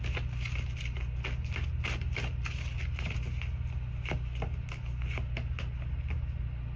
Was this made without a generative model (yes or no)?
yes